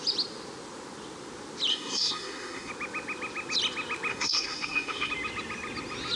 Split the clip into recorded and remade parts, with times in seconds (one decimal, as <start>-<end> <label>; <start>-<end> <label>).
0.0-1.7 recorded; 1.7-2.7 remade; 2.7-4.1 recorded; 4.1-5.1 remade; 5.1-6.2 recorded